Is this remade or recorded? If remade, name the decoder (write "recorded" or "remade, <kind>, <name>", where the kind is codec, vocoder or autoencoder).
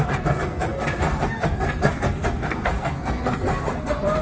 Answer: remade, codec, SNAC